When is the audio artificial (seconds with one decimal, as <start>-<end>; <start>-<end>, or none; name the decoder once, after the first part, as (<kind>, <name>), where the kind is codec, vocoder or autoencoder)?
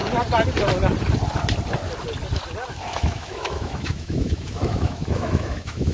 2.7-5.9 (autoencoder, DAC-VAE)